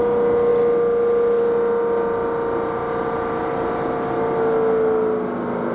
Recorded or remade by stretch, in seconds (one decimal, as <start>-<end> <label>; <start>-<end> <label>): 0.0-5.7 recorded